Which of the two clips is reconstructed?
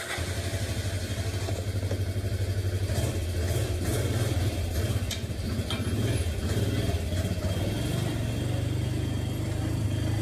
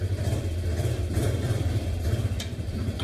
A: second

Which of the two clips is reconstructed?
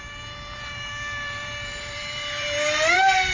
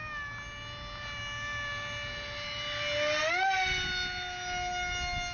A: first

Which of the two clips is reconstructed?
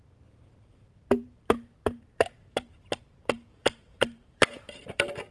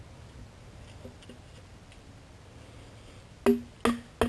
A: first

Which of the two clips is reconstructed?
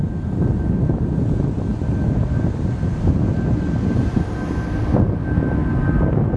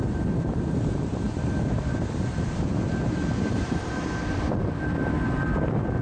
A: second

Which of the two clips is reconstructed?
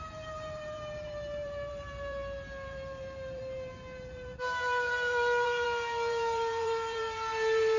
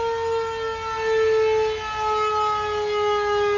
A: first